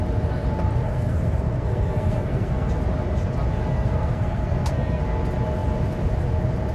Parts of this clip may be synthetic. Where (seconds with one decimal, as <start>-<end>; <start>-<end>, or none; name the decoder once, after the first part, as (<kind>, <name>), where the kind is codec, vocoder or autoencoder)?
0.8-2.7 (codec, SNAC); 3.7-5.0